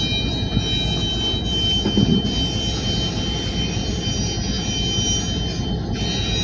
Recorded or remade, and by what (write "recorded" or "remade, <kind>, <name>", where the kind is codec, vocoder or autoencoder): recorded